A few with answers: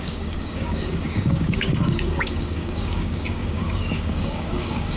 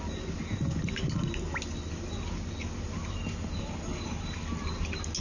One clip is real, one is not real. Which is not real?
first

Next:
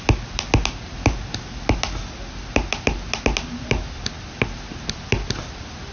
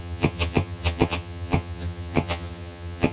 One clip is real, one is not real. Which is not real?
second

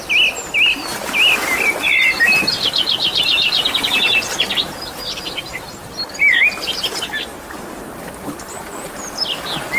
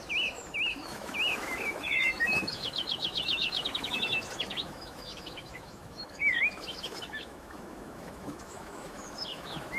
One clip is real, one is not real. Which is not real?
second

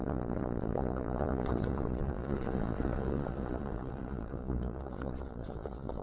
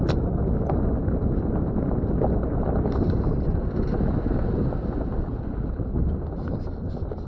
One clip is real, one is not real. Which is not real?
first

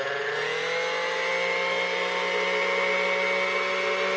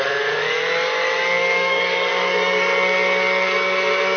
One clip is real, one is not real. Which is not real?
second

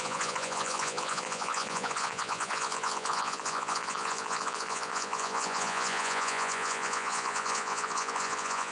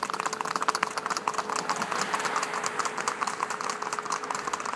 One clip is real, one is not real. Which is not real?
first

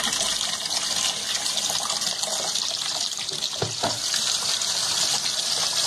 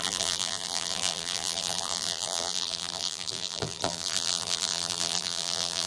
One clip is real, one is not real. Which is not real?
second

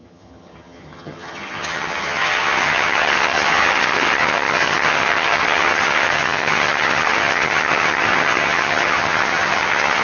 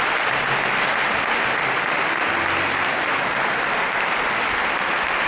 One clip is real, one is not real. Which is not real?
first